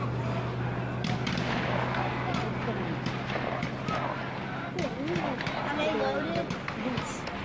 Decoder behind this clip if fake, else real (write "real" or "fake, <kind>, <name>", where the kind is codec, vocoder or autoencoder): real